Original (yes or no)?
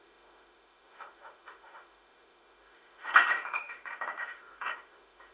no